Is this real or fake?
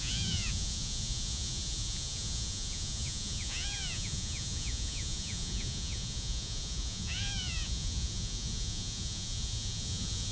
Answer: fake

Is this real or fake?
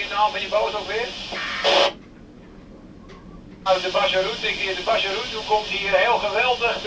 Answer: real